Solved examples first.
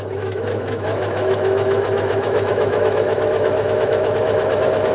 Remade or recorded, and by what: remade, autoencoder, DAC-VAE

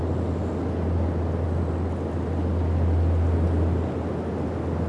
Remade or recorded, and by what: recorded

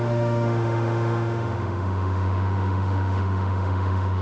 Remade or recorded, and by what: remade, autoencoder, DAC-VAE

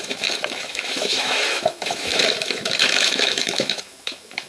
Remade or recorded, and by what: remade, autoencoder, DAC-VAE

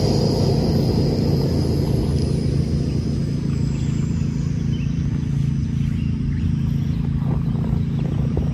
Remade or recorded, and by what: recorded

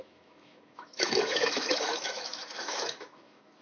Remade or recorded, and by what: remade, autoencoder, DAC-VAE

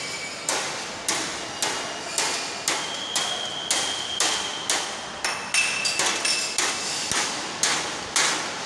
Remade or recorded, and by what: recorded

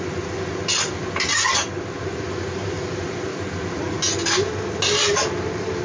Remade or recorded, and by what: recorded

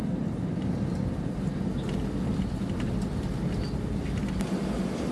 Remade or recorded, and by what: recorded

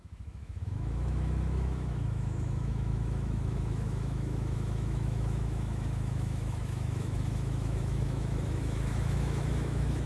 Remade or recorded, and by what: remade, autoencoder, DAC-VAE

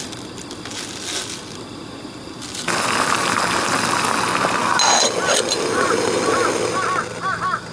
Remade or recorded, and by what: recorded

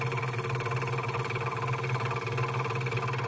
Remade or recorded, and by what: recorded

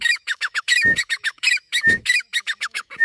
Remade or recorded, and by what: remade, autoencoder, DAC-VAE